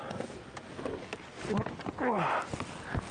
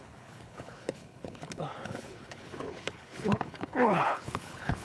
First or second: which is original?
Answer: first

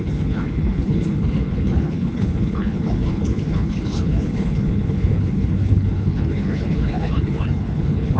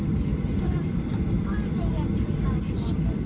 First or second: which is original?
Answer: second